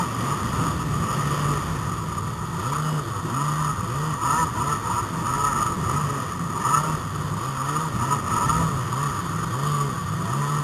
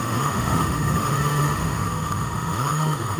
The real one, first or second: first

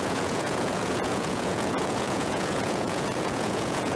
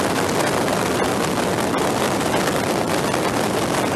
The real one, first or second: second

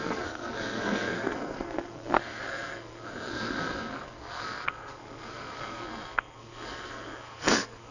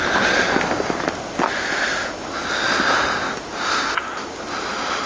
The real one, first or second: second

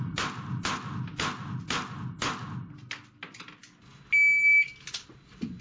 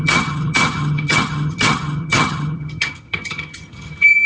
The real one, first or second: first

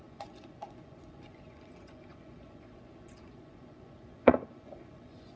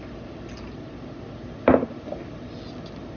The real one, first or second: second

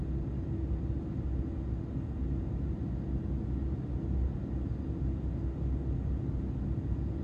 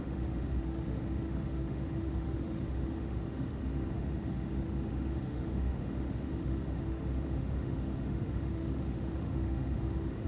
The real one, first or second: first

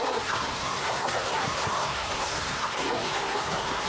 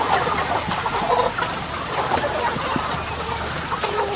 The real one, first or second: second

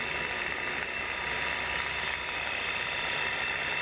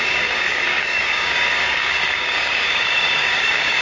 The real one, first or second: first